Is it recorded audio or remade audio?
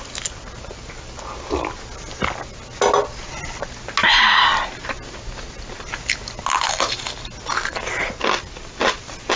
recorded